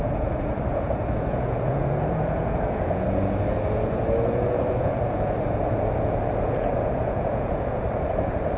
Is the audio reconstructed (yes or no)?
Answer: yes